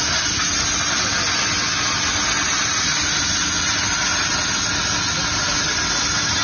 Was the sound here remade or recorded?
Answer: recorded